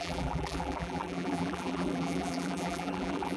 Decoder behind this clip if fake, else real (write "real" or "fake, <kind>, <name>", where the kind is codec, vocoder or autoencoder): fake, vocoder, BigVGAN v2